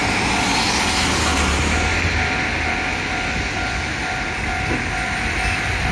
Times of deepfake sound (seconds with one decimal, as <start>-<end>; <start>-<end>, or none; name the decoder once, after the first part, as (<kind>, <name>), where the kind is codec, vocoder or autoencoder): none